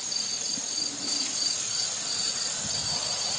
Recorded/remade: recorded